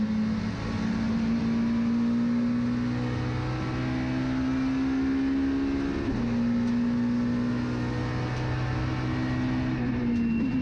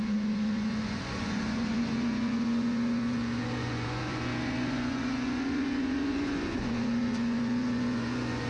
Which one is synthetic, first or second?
second